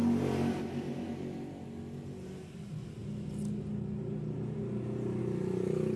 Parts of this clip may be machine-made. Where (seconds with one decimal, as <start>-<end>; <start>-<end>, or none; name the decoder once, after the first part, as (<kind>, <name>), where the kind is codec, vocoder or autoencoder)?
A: 0.0-0.6 (vocoder, BigVGAN v2)